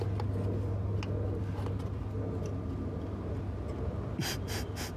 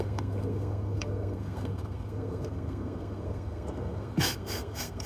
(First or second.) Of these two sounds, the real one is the first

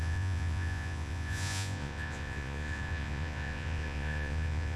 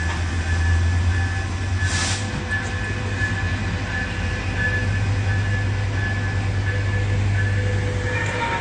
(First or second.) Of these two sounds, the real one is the second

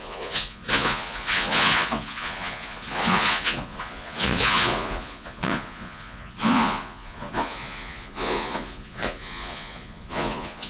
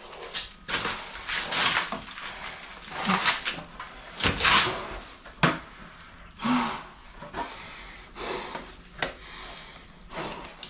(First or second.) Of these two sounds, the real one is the second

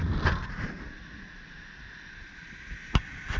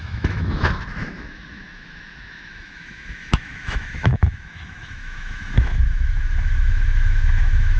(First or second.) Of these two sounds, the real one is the first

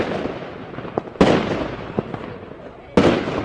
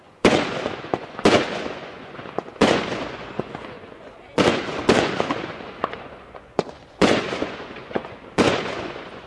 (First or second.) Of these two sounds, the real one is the first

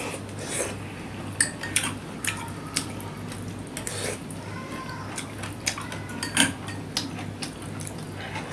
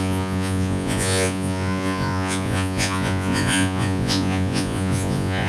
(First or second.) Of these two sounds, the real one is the first